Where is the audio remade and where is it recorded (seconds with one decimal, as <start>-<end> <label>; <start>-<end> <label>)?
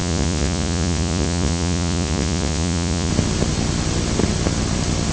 0.0-3.1 remade; 3.1-5.1 recorded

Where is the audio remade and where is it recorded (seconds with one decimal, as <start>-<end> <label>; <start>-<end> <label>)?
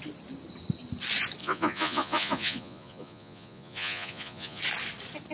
0.0-1.4 recorded; 1.4-4.6 remade; 4.6-5.3 recorded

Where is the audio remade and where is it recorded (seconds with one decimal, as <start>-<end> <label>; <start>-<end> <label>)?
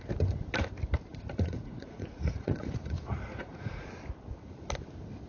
0.0-1.1 recorded; 1.1-3.8 remade; 3.8-5.3 recorded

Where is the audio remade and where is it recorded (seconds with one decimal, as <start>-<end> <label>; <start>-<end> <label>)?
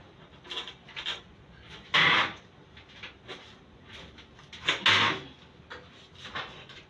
0.0-1.1 recorded; 1.1-2.3 remade; 2.3-6.3 recorded; 6.3-6.9 remade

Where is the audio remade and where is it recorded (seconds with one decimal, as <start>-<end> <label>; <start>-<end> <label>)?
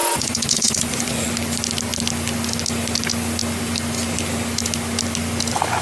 0.0-1.3 remade; 1.3-5.8 recorded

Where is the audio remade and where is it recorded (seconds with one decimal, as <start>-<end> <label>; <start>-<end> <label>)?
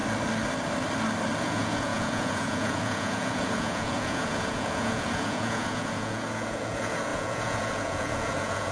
0.0-1.4 recorded; 1.4-8.7 remade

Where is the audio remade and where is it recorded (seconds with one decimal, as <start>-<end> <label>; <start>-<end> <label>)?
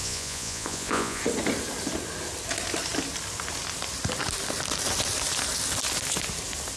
0.0-1.2 remade; 1.2-6.8 recorded